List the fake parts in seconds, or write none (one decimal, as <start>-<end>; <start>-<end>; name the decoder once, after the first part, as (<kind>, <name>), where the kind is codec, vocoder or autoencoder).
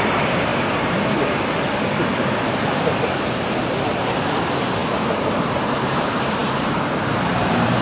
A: 0.0-0.5 (vocoder, BigVGAN v2); 4.3-7.8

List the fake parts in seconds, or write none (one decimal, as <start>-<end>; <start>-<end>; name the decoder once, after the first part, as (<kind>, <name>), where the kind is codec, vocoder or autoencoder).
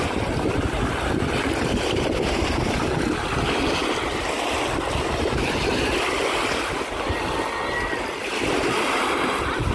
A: none